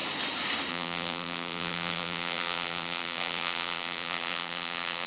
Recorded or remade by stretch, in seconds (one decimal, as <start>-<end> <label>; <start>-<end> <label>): 0.0-0.7 recorded; 0.7-5.1 remade

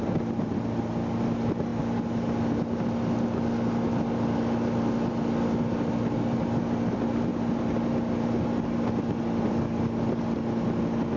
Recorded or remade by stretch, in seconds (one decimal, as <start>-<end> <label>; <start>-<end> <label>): 0.0-11.2 recorded